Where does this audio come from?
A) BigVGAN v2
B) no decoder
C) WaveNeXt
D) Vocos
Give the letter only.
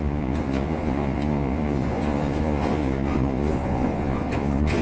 D